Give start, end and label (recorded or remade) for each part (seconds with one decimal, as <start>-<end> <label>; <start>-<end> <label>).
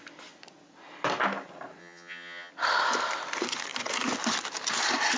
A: 0.0-1.8 recorded; 1.8-2.5 remade; 2.5-5.2 recorded